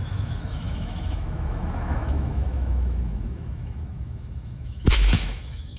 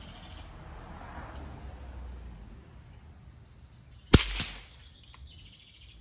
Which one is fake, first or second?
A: first